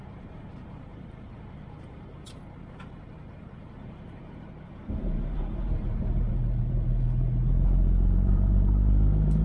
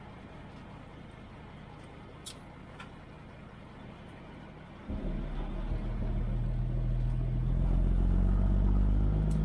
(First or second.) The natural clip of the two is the second